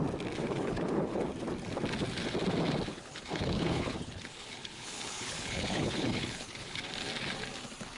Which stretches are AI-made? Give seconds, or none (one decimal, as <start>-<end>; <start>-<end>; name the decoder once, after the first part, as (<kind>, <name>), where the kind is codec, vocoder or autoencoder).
0.4-1.2 (codec, HILCodec); 2.9-6.8